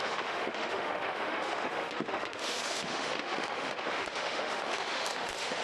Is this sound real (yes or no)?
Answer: no